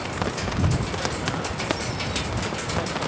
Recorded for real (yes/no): yes